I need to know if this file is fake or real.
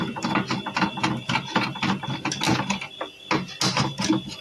real